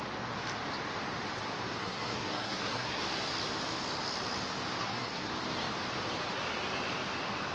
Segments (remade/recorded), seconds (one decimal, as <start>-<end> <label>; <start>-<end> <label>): 0.0-1.8 recorded; 1.8-3.0 remade; 3.0-4.8 recorded; 4.8-5.3 remade; 5.3-7.5 recorded